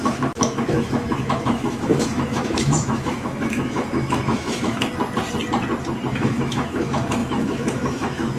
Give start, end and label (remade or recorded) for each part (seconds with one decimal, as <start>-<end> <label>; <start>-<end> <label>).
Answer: 0.0-4.9 remade; 4.9-6.1 recorded; 6.1-8.4 remade